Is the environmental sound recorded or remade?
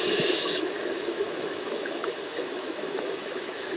remade